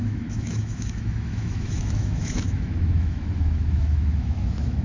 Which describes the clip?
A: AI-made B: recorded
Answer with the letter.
A